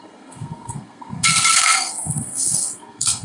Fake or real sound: fake